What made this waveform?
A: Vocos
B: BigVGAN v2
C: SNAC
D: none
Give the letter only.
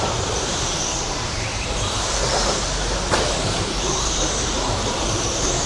B